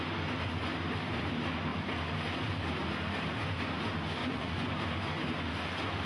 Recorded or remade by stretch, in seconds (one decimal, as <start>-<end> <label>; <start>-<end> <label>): 0.0-4.2 recorded; 4.2-4.7 remade; 4.7-6.1 recorded